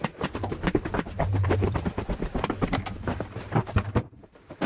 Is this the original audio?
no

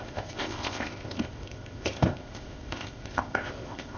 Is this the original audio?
no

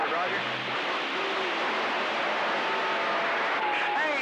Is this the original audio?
yes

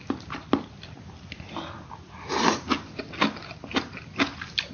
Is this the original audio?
yes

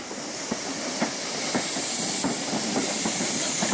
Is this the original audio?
yes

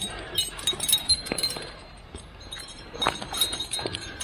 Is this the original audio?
no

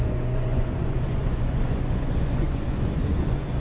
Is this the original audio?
no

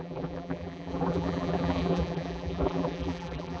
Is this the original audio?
no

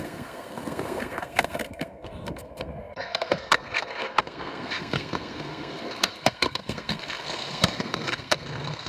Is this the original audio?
no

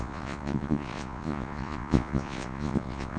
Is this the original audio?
no